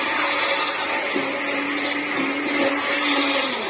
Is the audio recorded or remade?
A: recorded